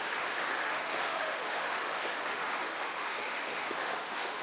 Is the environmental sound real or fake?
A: fake